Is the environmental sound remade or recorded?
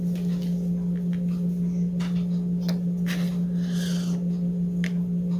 recorded